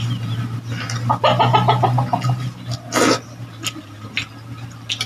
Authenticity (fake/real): real